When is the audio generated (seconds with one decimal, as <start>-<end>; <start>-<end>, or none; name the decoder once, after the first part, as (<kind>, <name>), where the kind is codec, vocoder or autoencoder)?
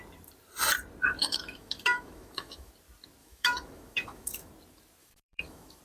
1.2-2.7 (autoencoder, DAC-VAE); 3.2-4.5; 5.0-5.8